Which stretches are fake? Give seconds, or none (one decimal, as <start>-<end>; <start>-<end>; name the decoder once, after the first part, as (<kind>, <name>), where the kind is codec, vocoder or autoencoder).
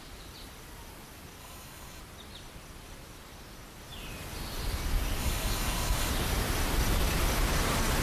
1.4-2.0 (codec, DAC); 5.2-6.1